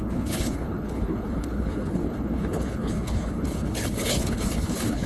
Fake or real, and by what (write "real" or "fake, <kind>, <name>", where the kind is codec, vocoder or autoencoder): fake, codec, HILCodec